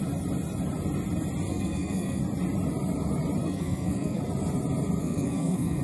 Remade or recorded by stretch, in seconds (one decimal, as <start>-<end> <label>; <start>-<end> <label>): 0.0-1.5 recorded; 1.5-2.2 remade; 2.2-3.4 recorded; 3.4-4.2 remade; 4.2-5.0 recorded; 5.0-5.8 remade